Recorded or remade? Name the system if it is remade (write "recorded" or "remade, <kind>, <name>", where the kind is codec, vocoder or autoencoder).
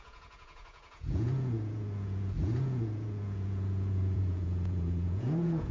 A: remade, vocoder, Vocos